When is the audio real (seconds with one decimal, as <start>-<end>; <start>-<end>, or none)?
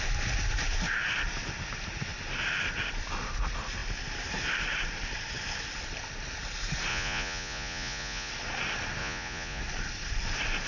0.0-6.9; 8.3-9.0; 9.6-10.7